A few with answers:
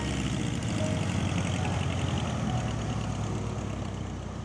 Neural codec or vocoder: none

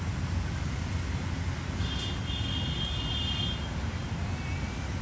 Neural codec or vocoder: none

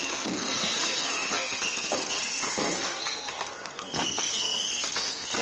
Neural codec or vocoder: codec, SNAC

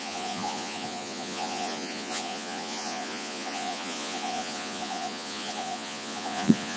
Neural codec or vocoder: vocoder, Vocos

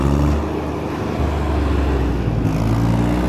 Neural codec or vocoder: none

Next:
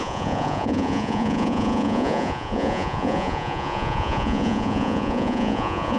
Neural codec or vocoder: vocoder, Vocos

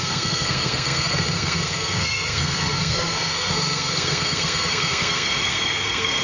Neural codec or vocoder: codec, SNAC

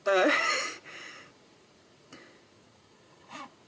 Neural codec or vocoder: vocoder, Vocos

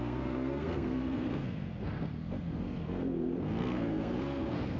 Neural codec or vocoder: codec, SNAC